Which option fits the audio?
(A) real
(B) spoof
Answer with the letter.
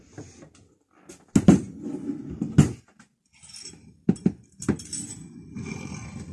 A